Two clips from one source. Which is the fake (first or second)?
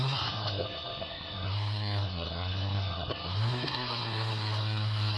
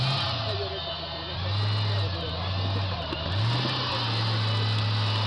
first